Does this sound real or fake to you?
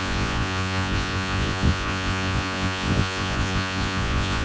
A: fake